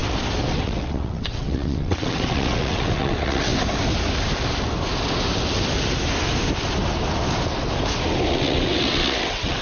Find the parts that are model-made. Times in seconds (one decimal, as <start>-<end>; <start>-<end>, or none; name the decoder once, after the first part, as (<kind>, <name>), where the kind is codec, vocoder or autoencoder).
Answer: 0.5-3.5 (vocoder, WaveNeXt); 8.3-9.6